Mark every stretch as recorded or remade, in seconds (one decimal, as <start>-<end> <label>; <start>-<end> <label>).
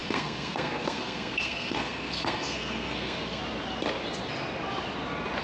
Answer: 0.0-3.4 remade; 3.4-5.4 recorded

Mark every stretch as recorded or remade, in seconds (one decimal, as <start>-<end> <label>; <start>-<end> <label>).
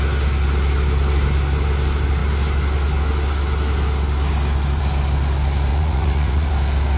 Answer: 0.0-5.7 recorded; 5.7-6.5 remade; 6.5-7.0 recorded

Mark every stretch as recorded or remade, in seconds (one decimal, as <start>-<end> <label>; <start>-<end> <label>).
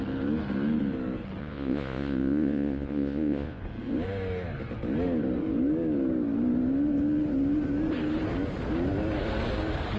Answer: 0.0-1.4 recorded; 1.4-3.6 remade; 3.6-10.0 recorded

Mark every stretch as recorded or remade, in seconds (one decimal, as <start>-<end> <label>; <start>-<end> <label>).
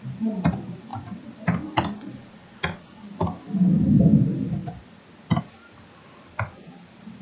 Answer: 0.0-0.9 remade; 0.9-4.0 recorded; 4.0-4.6 remade; 4.6-5.4 recorded; 5.4-7.2 remade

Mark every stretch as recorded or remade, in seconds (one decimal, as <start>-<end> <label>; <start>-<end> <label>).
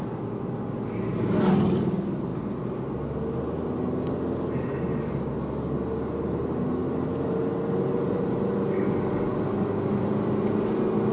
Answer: 0.0-11.1 recorded